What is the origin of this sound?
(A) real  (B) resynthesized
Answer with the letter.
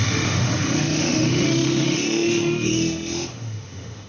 B